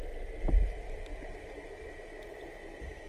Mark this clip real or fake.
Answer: real